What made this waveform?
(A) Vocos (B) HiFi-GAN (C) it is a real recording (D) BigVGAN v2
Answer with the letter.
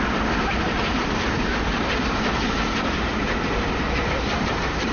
D